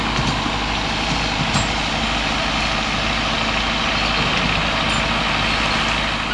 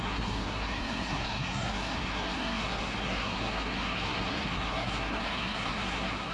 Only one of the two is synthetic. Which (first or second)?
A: second